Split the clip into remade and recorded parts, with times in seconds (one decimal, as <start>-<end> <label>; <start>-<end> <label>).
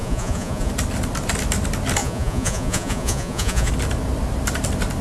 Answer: 0.0-0.7 remade; 0.7-2.0 recorded; 2.0-3.7 remade; 3.7-5.0 recorded